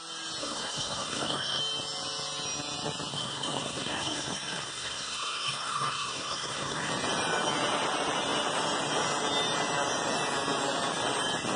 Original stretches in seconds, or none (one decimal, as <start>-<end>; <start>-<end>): 0.0-0.4; 1.6-3.1; 6.9-11.6